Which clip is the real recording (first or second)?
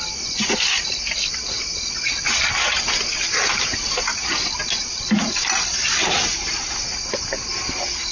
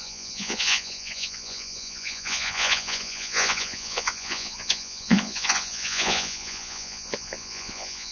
first